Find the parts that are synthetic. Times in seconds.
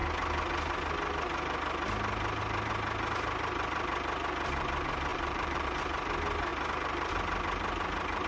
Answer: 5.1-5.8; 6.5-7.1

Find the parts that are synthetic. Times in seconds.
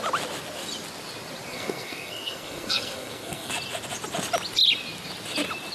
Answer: 1.5-3.5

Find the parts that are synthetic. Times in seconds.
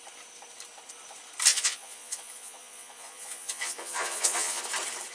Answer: 1.5-4.6